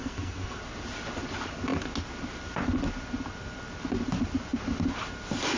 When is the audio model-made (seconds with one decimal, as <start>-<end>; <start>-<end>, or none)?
0.0-0.6